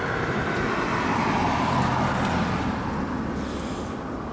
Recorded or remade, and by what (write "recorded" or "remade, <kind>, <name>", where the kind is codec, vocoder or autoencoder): recorded